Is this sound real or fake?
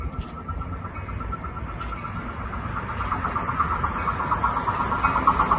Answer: real